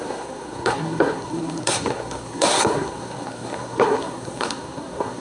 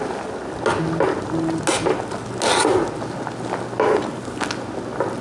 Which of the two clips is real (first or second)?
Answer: second